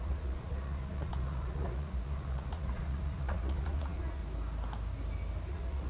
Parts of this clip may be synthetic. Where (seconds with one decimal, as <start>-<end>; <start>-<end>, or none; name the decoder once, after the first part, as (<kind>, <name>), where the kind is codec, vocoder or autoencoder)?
0.0-4.2 (vocoder, Vocos); 5.5-5.9